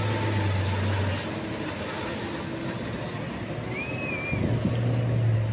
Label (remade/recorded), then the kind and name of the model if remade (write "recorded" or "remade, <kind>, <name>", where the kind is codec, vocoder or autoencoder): recorded